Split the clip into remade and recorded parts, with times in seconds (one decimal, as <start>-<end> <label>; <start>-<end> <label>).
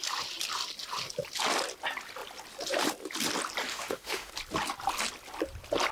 0.0-3.7 recorded; 3.7-4.3 remade; 4.3-5.9 recorded